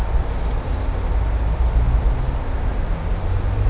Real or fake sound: real